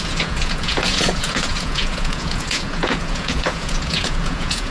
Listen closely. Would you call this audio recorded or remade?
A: remade